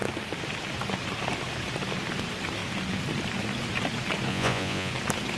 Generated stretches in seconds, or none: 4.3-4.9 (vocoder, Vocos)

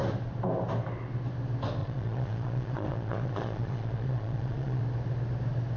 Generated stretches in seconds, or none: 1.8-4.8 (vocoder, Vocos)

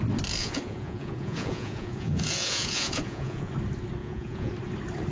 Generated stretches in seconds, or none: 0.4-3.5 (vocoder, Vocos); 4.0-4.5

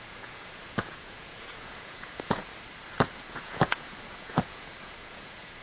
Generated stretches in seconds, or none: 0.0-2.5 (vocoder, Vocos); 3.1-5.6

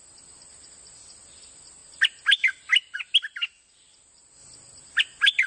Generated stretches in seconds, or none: none

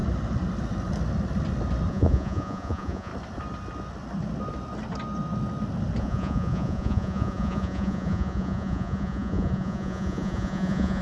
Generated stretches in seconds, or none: 1.9-3.1 (vocoder, Vocos); 6.0-11.0

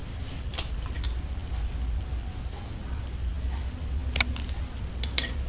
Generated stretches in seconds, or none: none